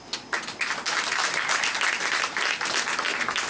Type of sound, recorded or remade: recorded